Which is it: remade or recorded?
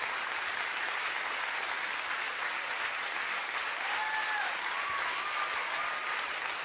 recorded